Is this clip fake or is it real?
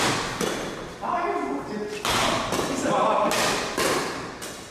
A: real